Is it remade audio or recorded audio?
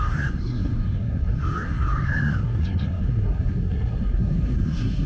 remade